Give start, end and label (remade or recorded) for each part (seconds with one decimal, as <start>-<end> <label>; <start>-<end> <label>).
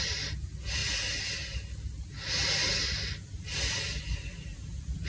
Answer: 0.0-5.1 recorded